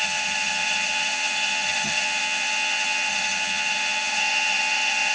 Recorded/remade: remade